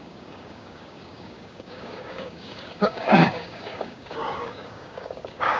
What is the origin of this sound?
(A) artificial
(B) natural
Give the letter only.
A